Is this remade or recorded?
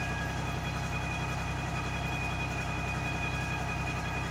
recorded